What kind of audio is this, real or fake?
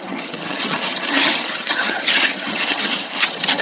fake